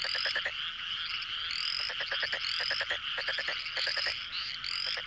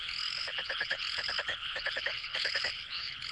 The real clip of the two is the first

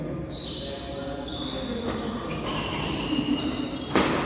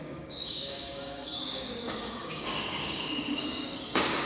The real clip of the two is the first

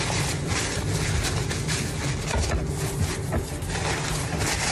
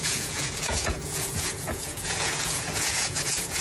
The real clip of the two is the first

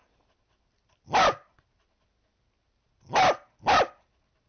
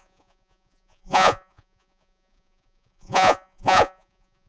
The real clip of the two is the first